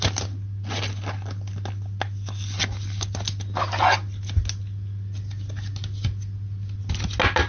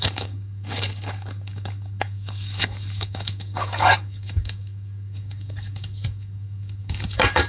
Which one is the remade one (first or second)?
second